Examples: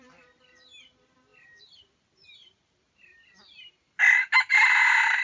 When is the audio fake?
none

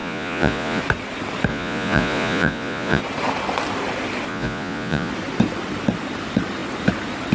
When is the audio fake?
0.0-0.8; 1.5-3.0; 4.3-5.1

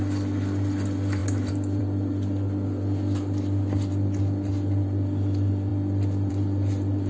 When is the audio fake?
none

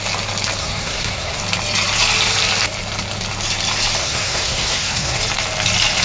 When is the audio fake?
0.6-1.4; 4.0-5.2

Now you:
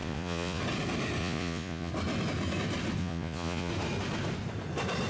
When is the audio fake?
0.0-0.6; 1.2-1.9; 3.0-3.7

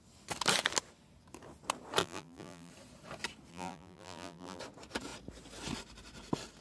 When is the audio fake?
2.0-2.7; 3.5-4.6